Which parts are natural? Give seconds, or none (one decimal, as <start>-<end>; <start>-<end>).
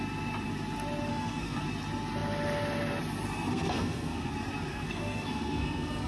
0.0-1.1; 1.6-3.5; 4.3-4.7